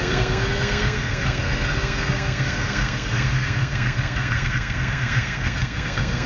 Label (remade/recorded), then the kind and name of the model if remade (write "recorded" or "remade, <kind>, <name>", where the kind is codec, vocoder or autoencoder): remade, codec, SNAC